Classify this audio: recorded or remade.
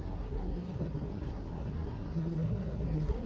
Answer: remade